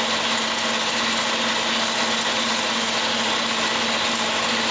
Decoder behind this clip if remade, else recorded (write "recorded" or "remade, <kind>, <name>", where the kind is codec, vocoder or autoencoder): recorded